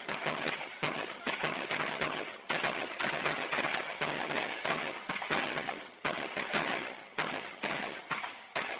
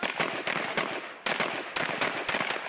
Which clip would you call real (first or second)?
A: second